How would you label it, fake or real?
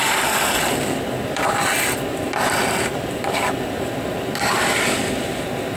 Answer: fake